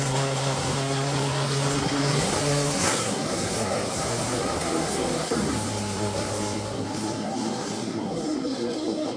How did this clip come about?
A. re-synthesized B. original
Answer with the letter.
A